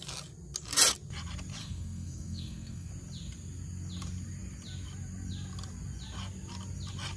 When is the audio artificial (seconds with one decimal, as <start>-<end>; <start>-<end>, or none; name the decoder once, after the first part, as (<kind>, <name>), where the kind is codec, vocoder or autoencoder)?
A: 1.6-2.9 (codec, SNAC)